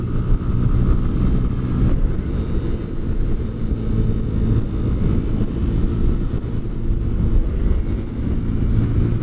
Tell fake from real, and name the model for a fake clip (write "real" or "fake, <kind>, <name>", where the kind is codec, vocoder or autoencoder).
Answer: real